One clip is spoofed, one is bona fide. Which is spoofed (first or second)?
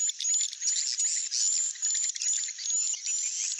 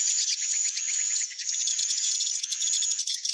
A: second